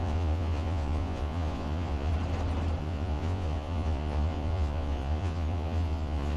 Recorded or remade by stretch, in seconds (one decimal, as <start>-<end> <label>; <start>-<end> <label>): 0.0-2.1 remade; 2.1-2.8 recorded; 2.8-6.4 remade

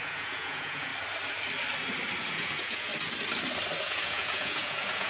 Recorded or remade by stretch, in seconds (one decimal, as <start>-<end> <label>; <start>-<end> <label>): 0.0-0.9 remade; 0.9-2.2 recorded; 2.2-2.9 remade; 2.9-3.8 recorded; 3.8-5.1 remade

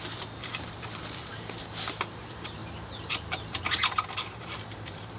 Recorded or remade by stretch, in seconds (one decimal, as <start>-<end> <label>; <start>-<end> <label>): 0.0-2.6 remade; 2.6-3.1 recorded; 3.1-5.2 remade

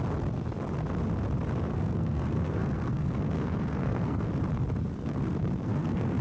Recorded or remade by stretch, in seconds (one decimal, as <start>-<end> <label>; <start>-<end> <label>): 0.0-1.7 recorded; 1.7-4.3 remade; 4.3-4.9 recorded; 4.9-6.2 remade

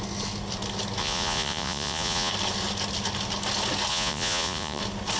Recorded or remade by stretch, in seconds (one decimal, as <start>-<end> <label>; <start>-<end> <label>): 0.0-1.0 recorded; 1.0-2.3 remade; 2.3-3.9 recorded; 3.9-4.8 remade; 4.8-5.2 recorded

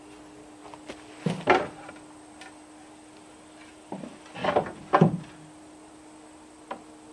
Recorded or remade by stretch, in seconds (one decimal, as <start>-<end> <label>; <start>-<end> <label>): 0.0-7.1 recorded